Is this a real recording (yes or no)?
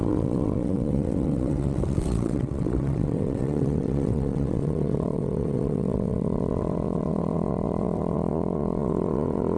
no